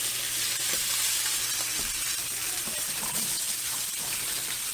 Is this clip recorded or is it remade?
remade